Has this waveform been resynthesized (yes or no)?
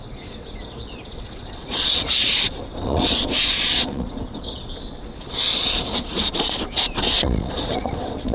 yes